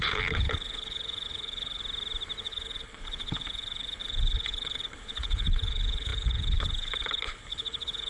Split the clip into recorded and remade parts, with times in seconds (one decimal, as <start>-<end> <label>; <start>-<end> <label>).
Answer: 0.0-1.8 remade; 1.8-2.4 recorded; 2.4-8.1 remade